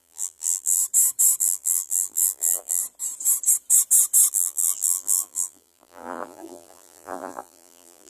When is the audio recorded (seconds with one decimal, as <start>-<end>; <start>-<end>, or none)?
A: 0.8-1.4; 2.8-4.3